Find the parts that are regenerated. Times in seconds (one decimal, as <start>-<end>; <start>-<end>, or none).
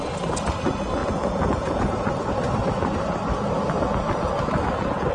1.0-2.1